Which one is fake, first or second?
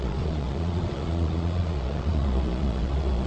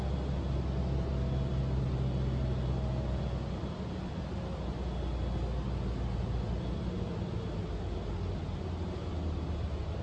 first